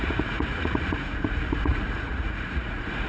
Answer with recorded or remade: remade